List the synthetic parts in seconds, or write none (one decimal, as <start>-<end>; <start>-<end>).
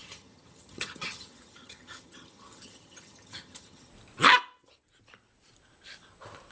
0.0-3.9